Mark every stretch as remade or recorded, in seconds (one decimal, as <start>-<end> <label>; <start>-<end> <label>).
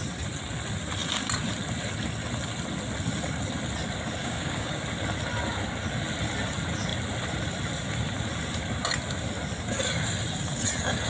0.0-4.2 recorded; 4.2-4.8 remade; 4.8-11.1 recorded